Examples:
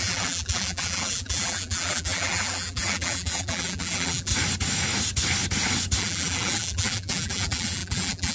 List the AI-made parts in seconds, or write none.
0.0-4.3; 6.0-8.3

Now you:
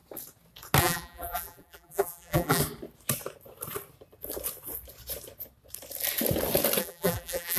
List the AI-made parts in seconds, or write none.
0.8-2.6; 6.8-7.6

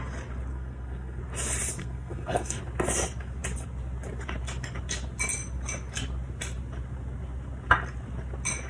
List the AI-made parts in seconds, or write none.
0.5-1.2; 1.8-2.6

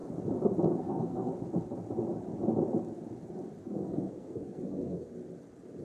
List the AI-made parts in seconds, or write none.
0.8-1.3; 3.6-5.1

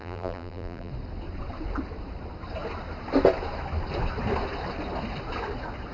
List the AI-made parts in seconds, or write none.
0.0-0.9